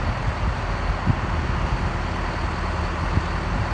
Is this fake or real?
real